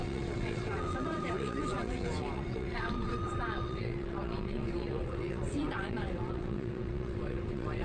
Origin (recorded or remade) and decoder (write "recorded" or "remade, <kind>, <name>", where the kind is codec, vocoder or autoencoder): remade, vocoder, WaveNeXt